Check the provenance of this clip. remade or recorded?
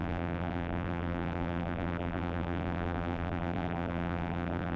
remade